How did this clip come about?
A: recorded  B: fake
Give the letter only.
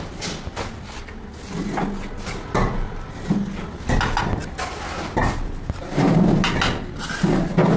A